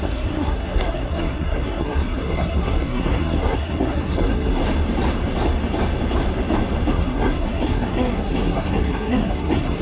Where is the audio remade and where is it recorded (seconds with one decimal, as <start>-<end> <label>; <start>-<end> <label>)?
0.0-4.6 remade; 4.6-6.9 recorded; 6.9-9.8 remade